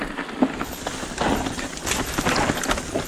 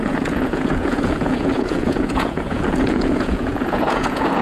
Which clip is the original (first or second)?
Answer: first